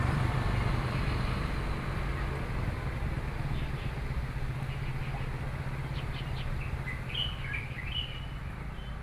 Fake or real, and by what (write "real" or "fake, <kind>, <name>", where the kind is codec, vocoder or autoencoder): real